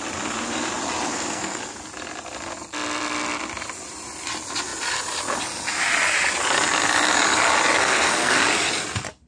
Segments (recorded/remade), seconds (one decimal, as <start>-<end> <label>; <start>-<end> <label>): 0.0-1.1 recorded; 1.1-1.6 remade; 1.6-7.8 recorded; 7.8-8.4 remade; 8.4-9.3 recorded